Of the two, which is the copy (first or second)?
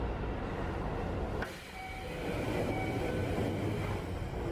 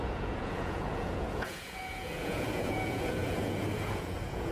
second